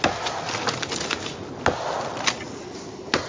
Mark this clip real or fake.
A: real